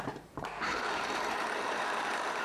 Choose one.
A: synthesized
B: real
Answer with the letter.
A